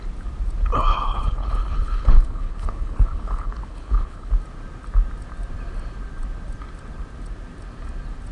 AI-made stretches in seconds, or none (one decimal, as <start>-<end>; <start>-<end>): 0.9-4.3